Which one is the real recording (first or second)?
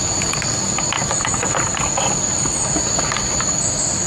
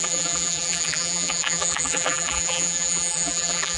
first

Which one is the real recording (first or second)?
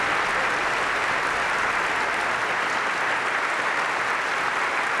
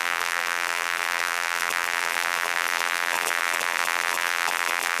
first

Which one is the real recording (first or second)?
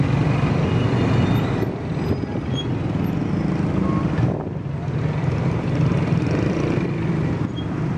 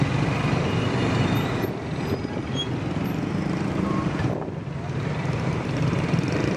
first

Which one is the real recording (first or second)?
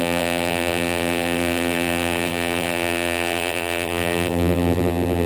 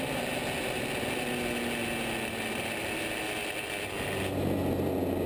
second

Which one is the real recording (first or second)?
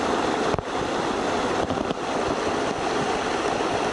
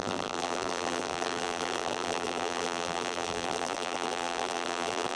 first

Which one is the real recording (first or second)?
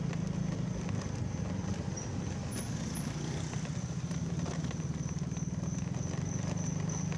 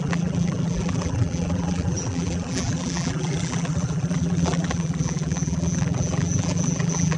first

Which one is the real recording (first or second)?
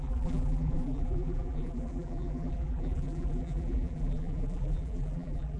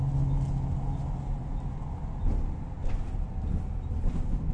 second